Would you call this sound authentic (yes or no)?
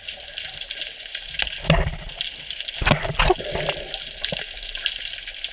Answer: yes